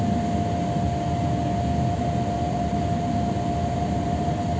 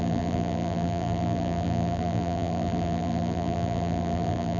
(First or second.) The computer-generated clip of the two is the second